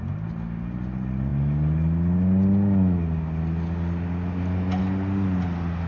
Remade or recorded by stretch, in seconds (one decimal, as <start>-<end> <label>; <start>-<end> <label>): 0.0-5.9 recorded